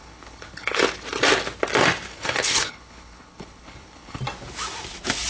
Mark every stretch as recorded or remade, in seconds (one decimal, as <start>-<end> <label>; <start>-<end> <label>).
0.0-0.8 remade; 0.8-2.1 recorded; 2.1-4.2 remade; 4.2-5.3 recorded